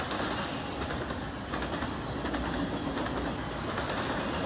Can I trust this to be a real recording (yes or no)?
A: yes